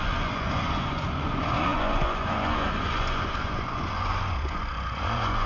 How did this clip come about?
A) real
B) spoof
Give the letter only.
B